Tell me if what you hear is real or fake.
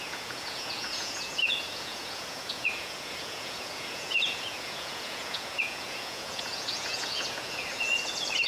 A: fake